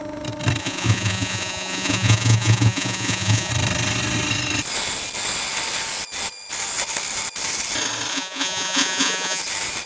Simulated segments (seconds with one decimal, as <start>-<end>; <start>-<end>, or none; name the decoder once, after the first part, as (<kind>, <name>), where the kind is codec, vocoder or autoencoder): 0.6-3.5 (vocoder, Vocos); 8.1-9.4